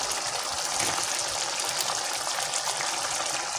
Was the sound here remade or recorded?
recorded